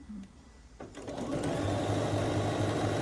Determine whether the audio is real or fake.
real